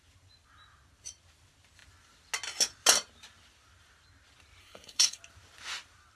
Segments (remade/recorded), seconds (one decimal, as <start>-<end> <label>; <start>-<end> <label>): 0.0-4.6 recorded; 4.6-5.2 remade; 5.2-6.2 recorded

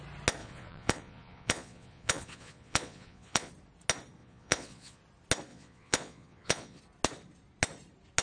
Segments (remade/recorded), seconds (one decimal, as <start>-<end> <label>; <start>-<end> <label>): 0.0-0.4 recorded; 0.4-3.5 remade; 3.5-4.2 recorded; 4.2-5.0 remade; 5.0-5.5 recorded; 5.5-6.8 remade; 6.8-8.2 recorded

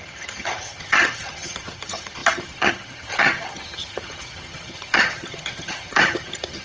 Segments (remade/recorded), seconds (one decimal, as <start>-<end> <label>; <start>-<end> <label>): 0.0-6.6 remade

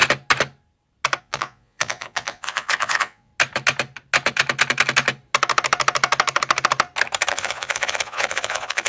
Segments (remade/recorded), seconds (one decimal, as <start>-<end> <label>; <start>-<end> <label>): 0.0-1.2 recorded; 1.2-3.3 remade; 3.3-7.3 recorded; 7.3-8.9 remade

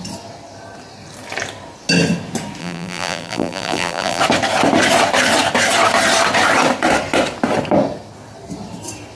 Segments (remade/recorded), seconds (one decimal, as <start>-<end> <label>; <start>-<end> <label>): 0.0-2.6 recorded; 2.6-4.2 remade; 4.2-9.2 recorded

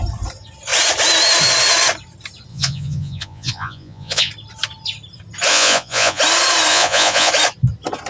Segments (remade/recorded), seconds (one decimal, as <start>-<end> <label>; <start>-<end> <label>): 0.0-2.5 recorded; 2.5-4.3 remade; 4.3-5.5 recorded; 5.5-6.2 remade; 6.2-6.7 recorded; 6.7-7.3 remade; 7.3-8.1 recorded